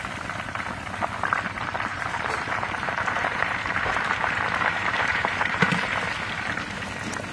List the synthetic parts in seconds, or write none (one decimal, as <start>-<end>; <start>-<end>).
1.9-5.7